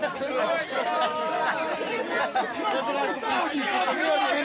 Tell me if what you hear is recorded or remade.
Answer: recorded